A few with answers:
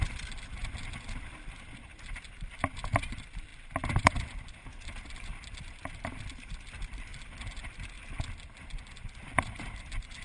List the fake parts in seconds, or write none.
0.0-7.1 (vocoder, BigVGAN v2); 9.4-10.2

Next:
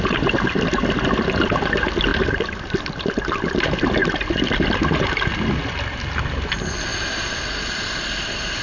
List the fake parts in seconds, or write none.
none

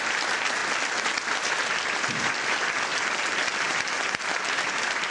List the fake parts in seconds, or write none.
0.0-0.6 (vocoder, BigVGAN v2); 1.3-2.9; 3.4-5.1

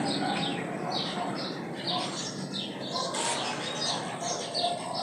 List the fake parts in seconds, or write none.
0.0-3.3 (vocoder, BigVGAN v2); 3.9-5.0

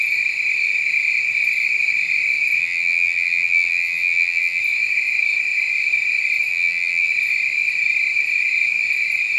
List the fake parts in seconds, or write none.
2.6-4.6 (vocoder, BigVGAN v2); 6.5-7.1

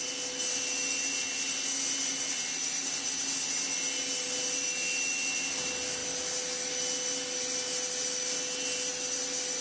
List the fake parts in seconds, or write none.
none

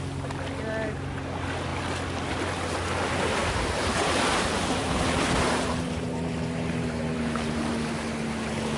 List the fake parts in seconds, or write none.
3.4-7.7 (vocoder, BigVGAN v2)